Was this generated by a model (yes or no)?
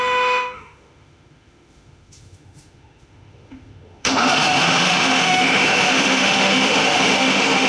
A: yes